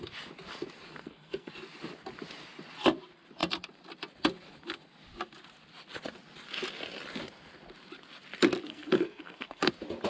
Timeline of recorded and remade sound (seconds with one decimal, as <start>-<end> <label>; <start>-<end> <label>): 0.0-1.0 recorded; 1.0-1.5 remade; 1.5-8.7 recorded; 8.7-9.7 remade; 9.7-10.1 recorded